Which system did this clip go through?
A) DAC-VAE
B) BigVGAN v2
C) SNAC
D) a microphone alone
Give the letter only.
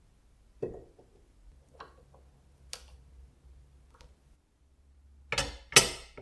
D